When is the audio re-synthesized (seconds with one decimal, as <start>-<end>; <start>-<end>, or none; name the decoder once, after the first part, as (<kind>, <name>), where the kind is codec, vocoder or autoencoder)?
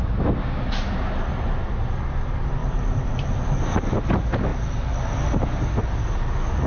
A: none